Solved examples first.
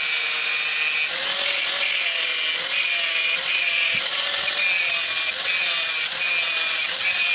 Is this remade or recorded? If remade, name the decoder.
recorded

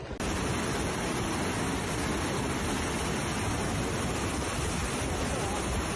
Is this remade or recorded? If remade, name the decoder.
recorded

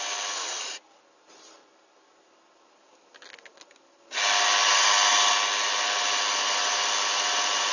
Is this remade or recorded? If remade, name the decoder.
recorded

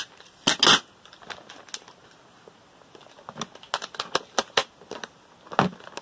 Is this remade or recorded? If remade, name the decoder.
recorded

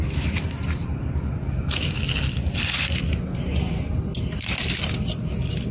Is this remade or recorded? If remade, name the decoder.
recorded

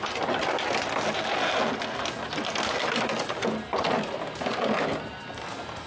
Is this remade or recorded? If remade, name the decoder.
recorded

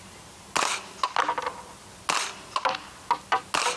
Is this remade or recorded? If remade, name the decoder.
recorded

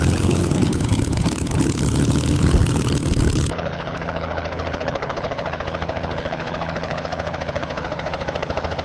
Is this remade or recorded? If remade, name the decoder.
remade, codec, HILCodec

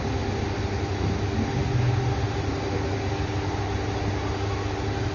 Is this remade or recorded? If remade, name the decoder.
recorded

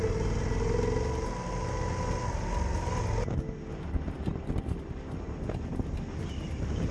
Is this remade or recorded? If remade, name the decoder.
recorded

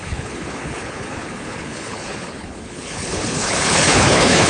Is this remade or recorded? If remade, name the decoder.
remade, codec, HILCodec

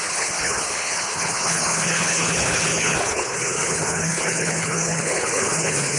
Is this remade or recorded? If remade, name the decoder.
remade, codec, HILCodec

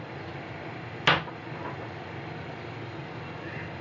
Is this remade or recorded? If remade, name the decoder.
recorded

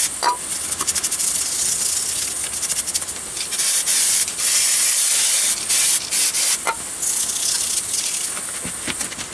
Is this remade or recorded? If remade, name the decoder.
recorded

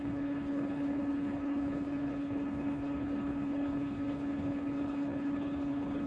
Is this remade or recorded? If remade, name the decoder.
remade, codec, HILCodec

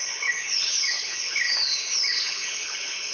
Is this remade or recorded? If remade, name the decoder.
remade, codec, HILCodec